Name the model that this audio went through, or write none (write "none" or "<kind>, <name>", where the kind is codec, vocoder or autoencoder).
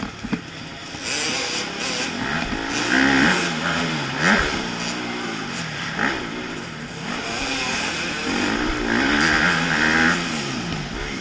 none